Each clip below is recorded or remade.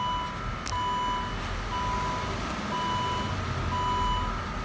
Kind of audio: recorded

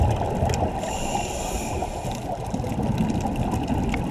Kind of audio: recorded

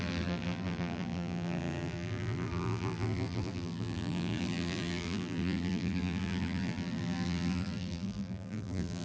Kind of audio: remade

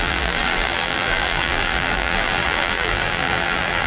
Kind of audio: remade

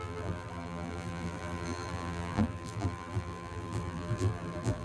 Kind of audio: remade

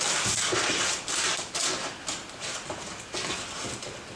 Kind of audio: recorded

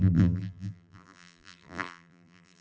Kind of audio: remade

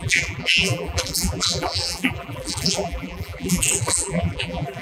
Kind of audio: remade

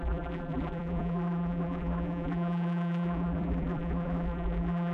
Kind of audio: remade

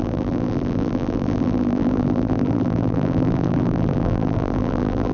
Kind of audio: remade